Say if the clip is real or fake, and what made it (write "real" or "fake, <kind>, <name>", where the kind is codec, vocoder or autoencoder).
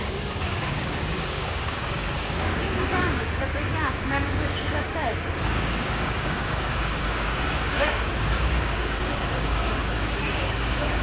fake, codec, DAC